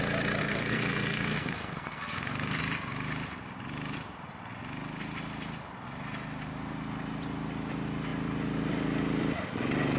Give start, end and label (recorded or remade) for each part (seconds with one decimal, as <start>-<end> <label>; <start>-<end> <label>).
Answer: 0.0-0.4 recorded; 0.4-2.6 remade; 2.6-10.0 recorded